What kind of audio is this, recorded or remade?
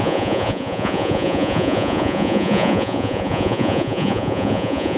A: remade